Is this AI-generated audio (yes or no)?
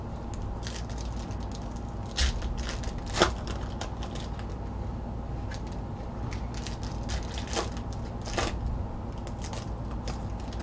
no